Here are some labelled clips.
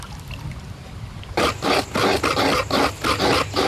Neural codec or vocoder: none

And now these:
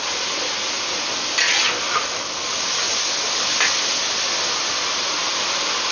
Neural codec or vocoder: none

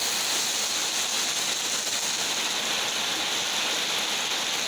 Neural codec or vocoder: none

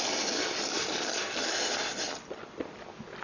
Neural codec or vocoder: none